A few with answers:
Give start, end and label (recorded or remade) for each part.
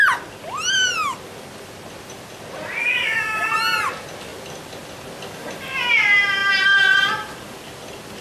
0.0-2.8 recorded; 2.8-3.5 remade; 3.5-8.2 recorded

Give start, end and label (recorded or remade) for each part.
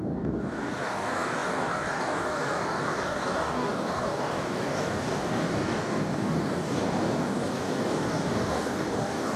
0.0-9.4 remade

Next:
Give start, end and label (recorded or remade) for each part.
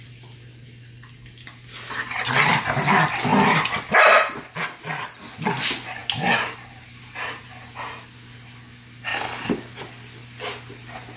0.0-11.2 recorded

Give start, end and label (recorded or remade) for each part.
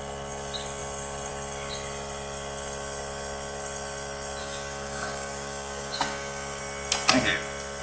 0.0-4.4 recorded; 4.4-6.6 remade; 6.6-7.8 recorded